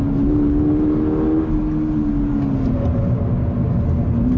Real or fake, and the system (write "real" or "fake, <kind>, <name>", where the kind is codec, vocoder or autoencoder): real